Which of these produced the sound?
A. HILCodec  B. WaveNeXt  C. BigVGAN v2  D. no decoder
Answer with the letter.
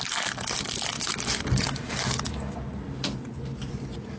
D